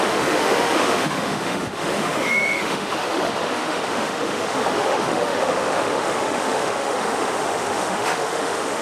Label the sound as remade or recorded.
remade